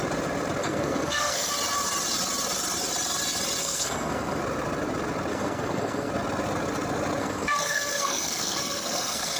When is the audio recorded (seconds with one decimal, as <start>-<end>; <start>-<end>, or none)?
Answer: 0.0-0.6; 1.5-3.6; 4.4-5.3; 6.1-7.2